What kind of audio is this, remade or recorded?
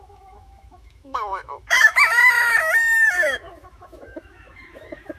remade